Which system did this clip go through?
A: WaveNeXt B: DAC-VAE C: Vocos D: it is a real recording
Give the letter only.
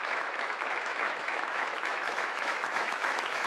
B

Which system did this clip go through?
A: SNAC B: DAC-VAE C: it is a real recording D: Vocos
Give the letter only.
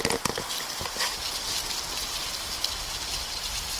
C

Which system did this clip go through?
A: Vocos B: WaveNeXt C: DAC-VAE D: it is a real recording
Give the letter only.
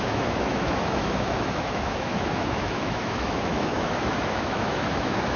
C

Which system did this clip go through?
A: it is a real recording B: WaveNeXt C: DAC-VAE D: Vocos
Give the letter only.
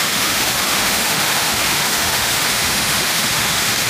C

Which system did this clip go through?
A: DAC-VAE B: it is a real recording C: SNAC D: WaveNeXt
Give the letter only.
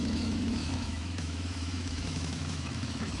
A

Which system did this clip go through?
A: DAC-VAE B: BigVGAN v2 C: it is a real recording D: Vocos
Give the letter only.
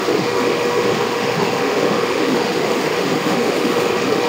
A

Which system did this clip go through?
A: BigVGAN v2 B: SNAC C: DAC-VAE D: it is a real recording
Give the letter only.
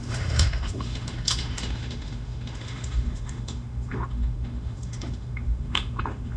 C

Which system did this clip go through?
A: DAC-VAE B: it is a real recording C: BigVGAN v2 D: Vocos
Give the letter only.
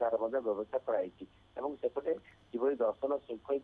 B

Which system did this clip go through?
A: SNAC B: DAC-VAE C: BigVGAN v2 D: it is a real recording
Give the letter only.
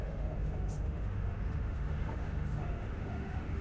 B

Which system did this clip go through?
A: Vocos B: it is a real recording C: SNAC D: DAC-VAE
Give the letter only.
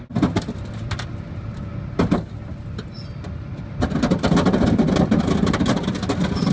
B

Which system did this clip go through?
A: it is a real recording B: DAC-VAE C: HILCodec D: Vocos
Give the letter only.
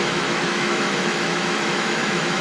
B